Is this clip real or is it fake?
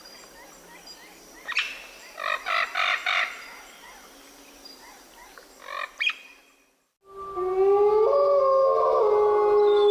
real